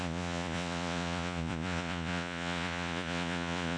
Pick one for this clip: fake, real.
fake